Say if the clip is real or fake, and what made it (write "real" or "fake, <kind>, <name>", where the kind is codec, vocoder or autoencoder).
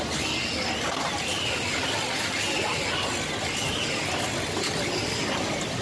real